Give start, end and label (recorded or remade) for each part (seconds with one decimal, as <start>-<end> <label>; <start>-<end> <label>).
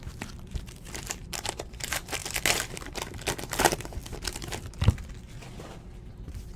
0.0-2.2 remade; 2.2-3.5 recorded; 3.5-4.0 remade; 4.0-6.6 recorded